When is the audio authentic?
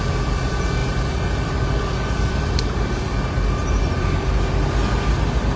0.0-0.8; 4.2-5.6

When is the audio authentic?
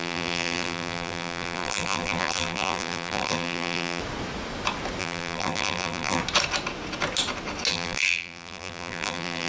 4.0-5.0; 6.2-7.7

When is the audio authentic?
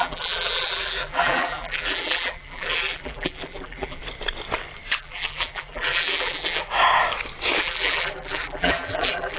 4.0-5.0; 6.7-7.6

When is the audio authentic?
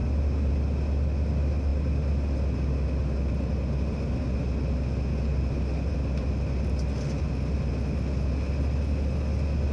0.0-9.7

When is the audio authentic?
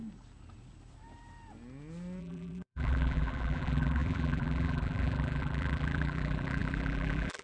0.0-2.2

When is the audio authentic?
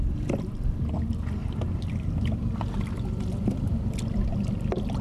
0.0-1.4; 3.8-5.0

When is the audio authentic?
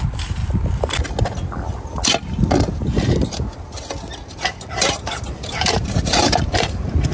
0.4-4.7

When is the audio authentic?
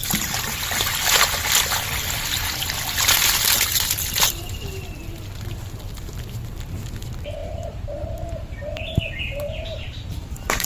0.6-7.4